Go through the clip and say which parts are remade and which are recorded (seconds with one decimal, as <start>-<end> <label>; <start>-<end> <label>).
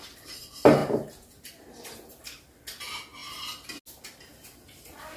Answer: 0.0-0.8 recorded; 0.8-2.1 remade; 2.1-5.2 recorded